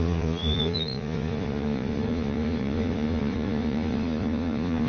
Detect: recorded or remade remade